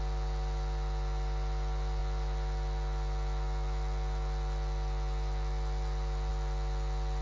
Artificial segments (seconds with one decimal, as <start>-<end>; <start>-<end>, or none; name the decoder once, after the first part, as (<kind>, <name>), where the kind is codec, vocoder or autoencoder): none